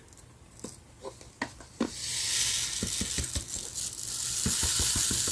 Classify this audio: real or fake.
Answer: real